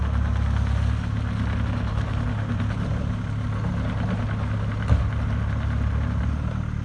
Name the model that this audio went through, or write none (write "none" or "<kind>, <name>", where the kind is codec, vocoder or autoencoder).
none